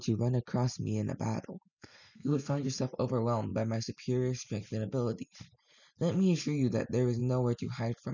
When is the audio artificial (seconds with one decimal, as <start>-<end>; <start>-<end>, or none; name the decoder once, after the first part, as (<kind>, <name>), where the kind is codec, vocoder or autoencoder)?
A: 1.7-2.6 (codec, SNAC)